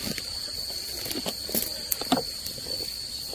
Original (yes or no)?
yes